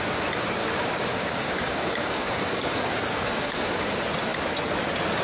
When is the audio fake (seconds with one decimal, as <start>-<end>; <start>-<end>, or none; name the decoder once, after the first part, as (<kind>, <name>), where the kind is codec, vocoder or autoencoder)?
0.6-3.7 (codec, DAC)